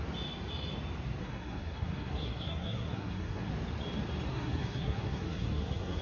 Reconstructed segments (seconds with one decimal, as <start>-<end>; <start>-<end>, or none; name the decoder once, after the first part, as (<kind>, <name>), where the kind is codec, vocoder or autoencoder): 1.2-3.5 (codec, SNAC); 4.3-6.0